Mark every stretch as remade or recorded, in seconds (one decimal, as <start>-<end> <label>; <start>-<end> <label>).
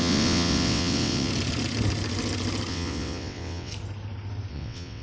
0.0-1.3 remade; 1.3-2.7 recorded; 2.7-3.7 remade; 3.7-4.5 recorded; 4.5-5.0 remade